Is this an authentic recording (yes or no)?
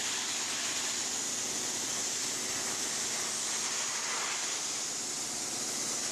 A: yes